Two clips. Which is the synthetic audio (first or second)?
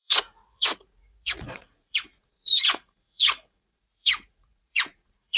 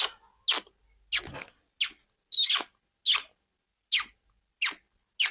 first